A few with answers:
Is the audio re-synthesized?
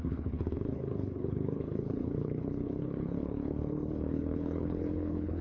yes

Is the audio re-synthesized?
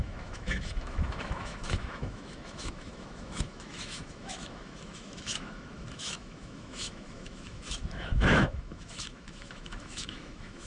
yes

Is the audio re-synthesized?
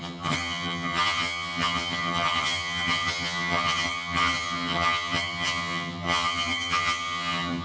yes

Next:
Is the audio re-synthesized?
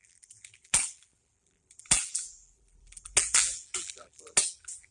yes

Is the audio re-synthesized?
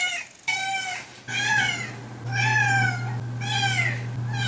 no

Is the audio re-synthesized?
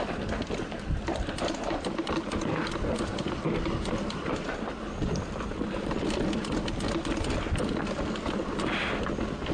no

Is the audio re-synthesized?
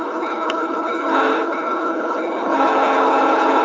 yes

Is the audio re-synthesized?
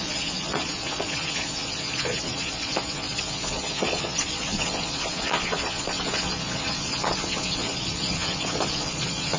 yes